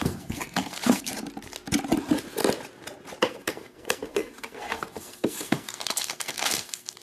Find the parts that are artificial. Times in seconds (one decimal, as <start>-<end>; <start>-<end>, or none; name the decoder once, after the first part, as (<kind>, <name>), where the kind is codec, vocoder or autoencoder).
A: 0.0-1.1 (codec, SNAC); 3.2-7.0